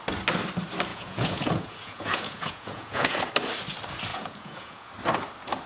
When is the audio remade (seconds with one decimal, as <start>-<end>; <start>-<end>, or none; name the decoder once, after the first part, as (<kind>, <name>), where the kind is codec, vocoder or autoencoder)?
0.9-3.3 (vocoder, Vocos); 4.1-4.9